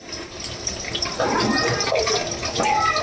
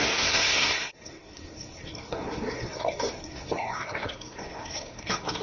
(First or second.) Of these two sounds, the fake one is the second